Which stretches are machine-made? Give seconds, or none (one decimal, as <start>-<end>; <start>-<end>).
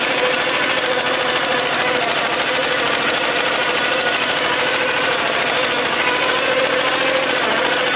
none